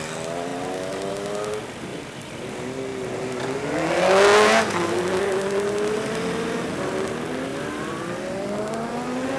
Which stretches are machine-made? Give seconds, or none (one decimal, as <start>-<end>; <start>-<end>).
1.9-2.5